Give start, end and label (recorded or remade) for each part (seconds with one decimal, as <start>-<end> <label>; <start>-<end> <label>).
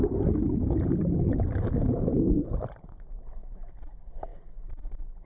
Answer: 0.0-3.1 remade; 3.1-5.2 recorded